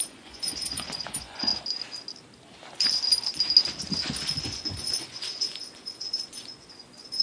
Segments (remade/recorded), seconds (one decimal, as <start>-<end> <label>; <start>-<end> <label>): 0.0-1.5 remade; 1.5-4.4 recorded; 4.4-7.2 remade